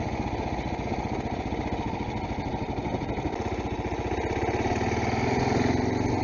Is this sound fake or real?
real